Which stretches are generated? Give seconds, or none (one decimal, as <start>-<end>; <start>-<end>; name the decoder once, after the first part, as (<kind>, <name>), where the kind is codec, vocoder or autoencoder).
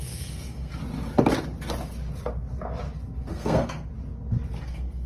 0.0-0.8 (codec, SNAC); 3.3-3.9; 4.6-5.1